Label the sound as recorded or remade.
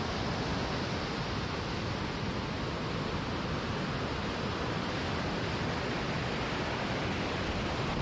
recorded